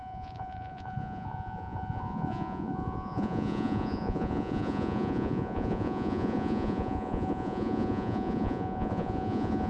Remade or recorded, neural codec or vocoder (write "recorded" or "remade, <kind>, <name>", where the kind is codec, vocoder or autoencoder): remade, vocoder, Vocos